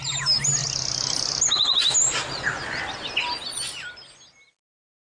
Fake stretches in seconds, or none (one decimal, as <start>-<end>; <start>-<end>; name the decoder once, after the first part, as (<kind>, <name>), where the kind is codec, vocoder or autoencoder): none